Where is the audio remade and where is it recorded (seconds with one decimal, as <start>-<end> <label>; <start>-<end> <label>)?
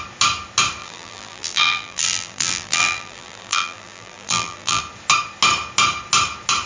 0.0-0.8 recorded; 0.8-4.8 remade; 4.8-6.7 recorded